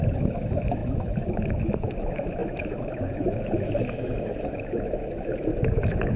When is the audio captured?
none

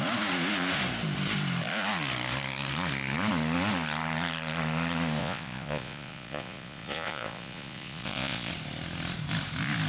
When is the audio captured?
0.0-5.2; 8.5-9.9

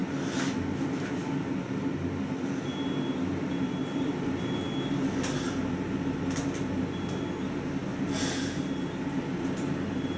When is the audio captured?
0.0-3.8; 4.4-10.2

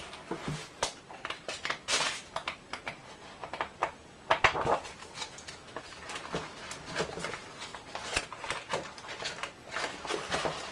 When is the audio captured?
0.0-10.7

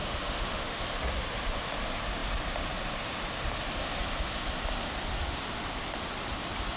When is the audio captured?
0.9-6.8

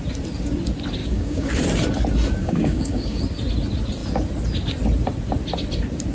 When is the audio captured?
0.0-1.0; 1.5-2.4; 3.2-6.1

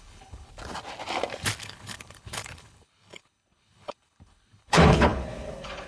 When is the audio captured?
0.5-1.6

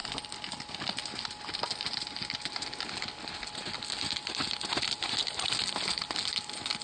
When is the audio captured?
0.0-6.8